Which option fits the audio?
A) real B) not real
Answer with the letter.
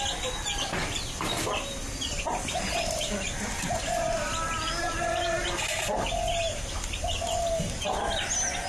A